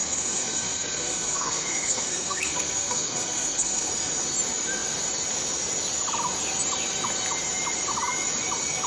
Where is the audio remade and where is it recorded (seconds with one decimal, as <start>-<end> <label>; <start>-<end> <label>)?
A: 0.0-3.9 remade; 3.9-8.9 recorded